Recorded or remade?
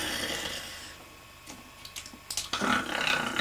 recorded